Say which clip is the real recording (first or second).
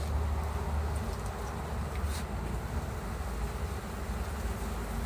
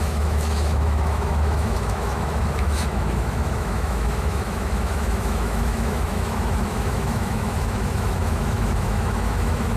first